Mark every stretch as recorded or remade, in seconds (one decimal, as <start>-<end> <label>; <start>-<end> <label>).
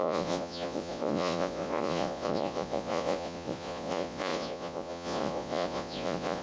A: 0.0-6.4 remade